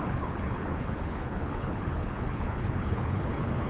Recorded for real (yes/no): no